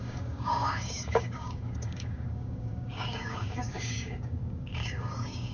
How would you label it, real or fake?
fake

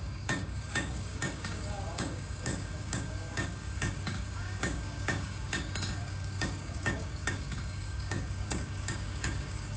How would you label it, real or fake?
fake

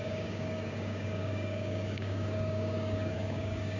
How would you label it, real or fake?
fake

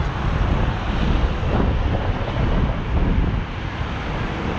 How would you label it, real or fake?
real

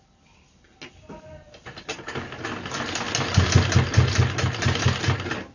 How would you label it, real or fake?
real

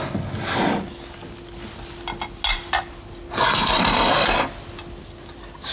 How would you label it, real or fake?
real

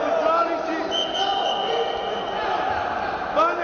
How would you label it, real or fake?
real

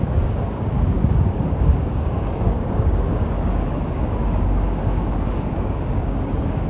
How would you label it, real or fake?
fake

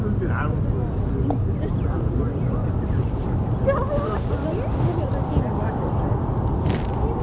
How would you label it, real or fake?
real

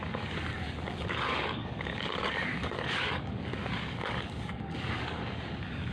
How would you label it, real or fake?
fake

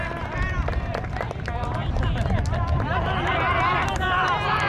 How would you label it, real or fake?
real